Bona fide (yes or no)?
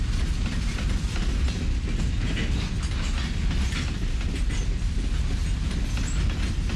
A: yes